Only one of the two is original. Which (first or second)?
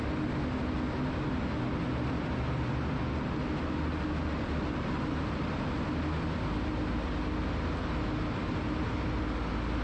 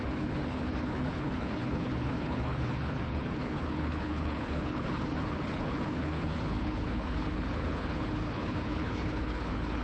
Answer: first